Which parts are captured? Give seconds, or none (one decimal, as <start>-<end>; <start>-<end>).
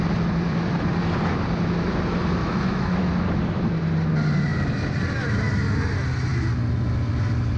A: 0.0-2.4; 3.1-7.6